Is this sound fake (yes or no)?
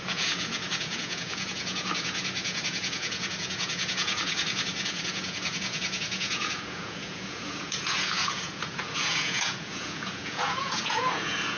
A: yes